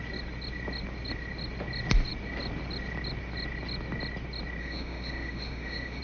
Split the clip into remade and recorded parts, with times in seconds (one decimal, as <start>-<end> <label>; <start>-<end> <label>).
0.0-4.6 recorded; 4.6-6.0 remade